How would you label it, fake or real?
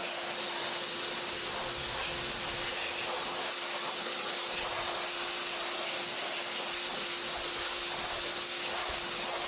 real